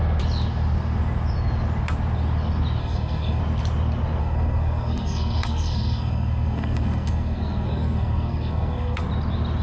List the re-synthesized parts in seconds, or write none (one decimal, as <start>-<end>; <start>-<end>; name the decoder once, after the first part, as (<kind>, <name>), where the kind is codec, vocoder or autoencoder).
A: 2.8-3.4 (codec, SNAC); 4.2-9.0